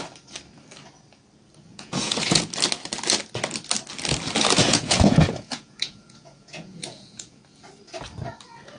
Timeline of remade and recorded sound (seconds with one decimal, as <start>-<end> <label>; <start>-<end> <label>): 0.0-1.7 recorded; 1.7-2.5 remade; 2.5-4.6 recorded; 4.6-7.4 remade; 7.4-8.8 recorded